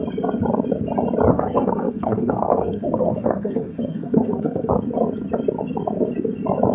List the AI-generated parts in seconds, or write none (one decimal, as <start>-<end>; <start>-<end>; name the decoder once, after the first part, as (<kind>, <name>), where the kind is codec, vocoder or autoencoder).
1.3-4.7 (codec, SNAC)